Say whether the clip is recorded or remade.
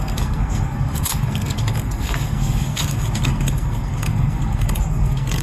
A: remade